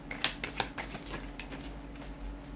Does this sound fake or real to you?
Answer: real